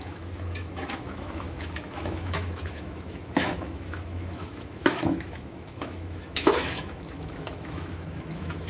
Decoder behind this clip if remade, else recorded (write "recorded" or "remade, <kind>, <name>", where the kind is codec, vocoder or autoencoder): remade, autoencoder, DAC-VAE